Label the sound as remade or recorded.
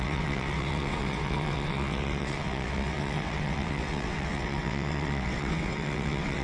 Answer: remade